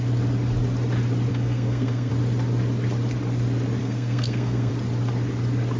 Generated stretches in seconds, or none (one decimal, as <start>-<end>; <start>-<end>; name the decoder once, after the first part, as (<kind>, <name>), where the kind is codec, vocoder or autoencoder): 1.3-2.1 (codec, SNAC); 3.8-4.7